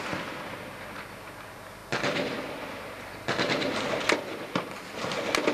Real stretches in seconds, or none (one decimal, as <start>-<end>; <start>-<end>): 0.0-5.5